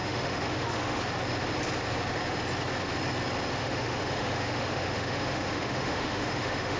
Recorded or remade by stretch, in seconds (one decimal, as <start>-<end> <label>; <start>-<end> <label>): 0.0-1.0 remade; 1.0-3.6 recorded; 3.6-6.8 remade